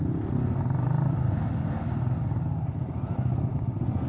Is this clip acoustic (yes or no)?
yes